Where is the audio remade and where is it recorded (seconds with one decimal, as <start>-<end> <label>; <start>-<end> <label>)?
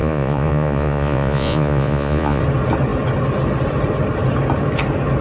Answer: 0.0-2.4 remade; 2.4-5.2 recorded